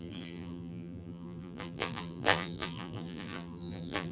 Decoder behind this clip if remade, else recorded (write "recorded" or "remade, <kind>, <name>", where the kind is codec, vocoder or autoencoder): remade, vocoder, BigVGAN v2